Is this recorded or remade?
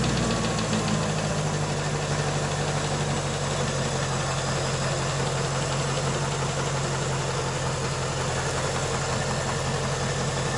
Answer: recorded